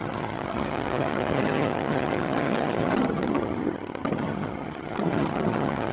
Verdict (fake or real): fake